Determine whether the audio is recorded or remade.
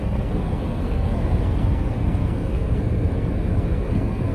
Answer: remade